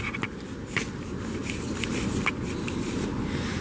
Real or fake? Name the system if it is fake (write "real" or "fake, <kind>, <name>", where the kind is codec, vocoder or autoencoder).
real